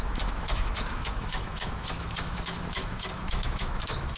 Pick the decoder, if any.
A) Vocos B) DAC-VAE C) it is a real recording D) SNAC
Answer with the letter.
B